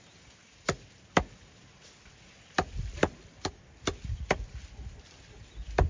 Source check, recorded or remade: recorded